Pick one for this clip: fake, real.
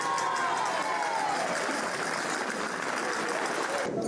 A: real